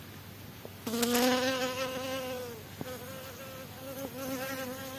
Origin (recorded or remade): recorded